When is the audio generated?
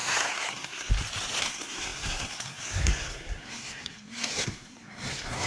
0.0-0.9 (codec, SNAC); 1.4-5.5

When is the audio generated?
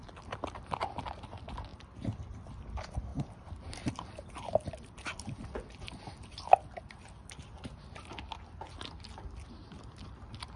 none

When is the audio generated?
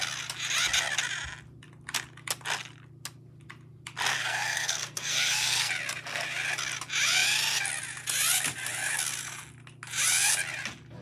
4.1-5.7 (codec, SNAC)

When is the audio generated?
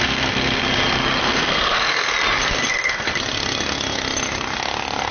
0.0-0.6 (codec, SNAC); 1.2-2.1; 2.7-3.1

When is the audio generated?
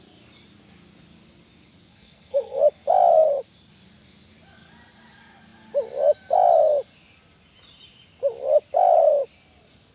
1.9-2.6 (codec, SNAC)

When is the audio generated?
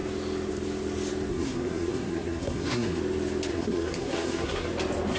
1.3-3.0 (codec, SNAC); 3.5-4.7